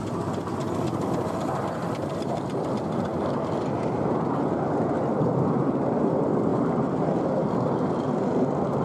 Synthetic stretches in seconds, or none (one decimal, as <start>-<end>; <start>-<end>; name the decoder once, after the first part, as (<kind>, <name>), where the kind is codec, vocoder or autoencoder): 6.5-7.1 (vocoder, BigVGAN v2)